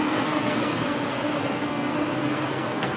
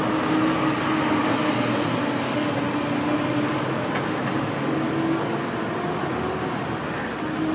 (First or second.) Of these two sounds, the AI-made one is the first